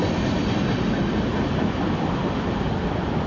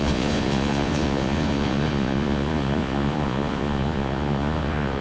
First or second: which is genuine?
first